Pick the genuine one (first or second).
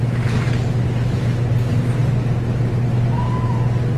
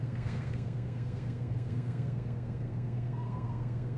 first